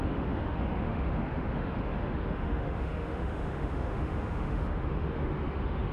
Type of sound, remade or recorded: remade